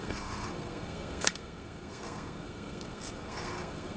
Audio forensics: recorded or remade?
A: remade